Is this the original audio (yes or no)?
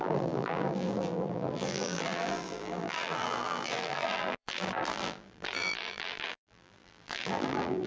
no